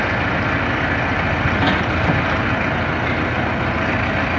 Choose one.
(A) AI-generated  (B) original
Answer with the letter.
A